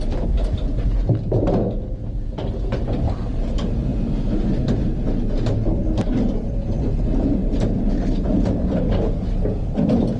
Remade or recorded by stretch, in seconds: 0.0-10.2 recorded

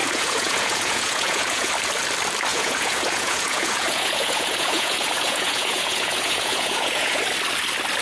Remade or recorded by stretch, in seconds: 0.0-1.7 remade; 1.7-2.5 recorded; 2.5-7.2 remade; 7.2-8.0 recorded

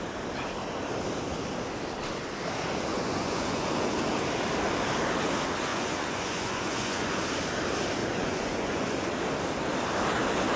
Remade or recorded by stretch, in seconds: 0.0-2.9 recorded; 2.9-3.9 remade; 3.9-5.7 recorded; 5.7-7.2 remade; 7.2-8.0 recorded; 8.0-9.1 remade; 9.1-10.6 recorded

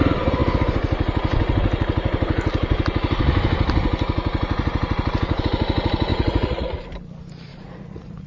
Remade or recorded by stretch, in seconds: 0.0-6.1 recorded; 6.1-6.9 remade; 6.9-7.5 recorded; 7.5-8.3 remade

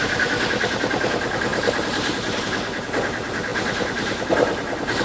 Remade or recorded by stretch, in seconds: 0.0-5.0 remade

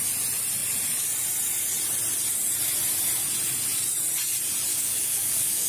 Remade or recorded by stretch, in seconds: 0.0-4.7 recorded; 4.7-5.7 remade

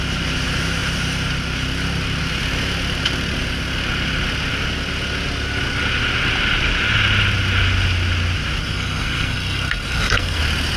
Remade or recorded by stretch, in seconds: 0.0-8.6 recorded; 8.6-10.4 remade; 10.4-10.8 recorded

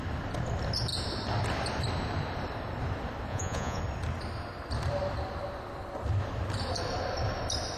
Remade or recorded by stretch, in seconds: 0.0-3.3 recorded; 3.3-3.8 remade; 3.8-7.8 recorded